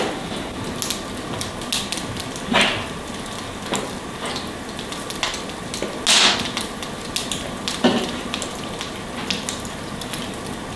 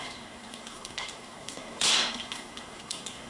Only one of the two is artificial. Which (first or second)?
second